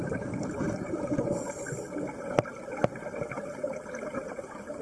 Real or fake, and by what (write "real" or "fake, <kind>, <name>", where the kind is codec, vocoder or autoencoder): real